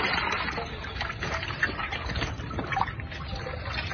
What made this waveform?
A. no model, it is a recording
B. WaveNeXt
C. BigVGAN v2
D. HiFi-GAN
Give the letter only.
A